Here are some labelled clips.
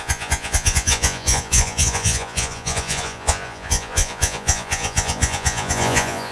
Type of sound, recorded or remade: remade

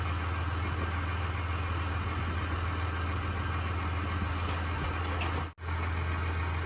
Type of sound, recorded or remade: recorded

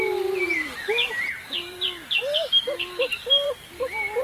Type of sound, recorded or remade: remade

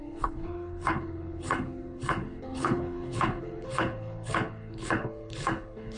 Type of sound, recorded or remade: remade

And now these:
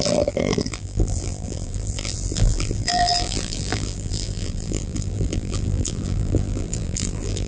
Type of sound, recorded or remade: remade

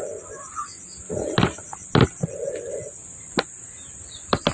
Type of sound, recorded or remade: recorded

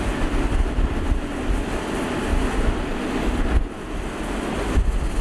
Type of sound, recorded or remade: recorded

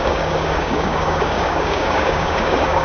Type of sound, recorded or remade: remade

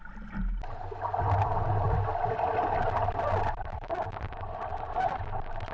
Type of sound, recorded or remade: recorded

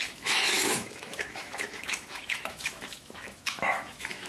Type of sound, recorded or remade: remade